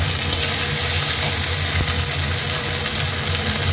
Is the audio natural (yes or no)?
yes